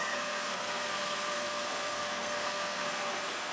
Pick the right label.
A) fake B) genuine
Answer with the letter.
A